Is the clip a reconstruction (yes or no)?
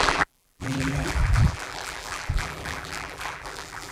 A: yes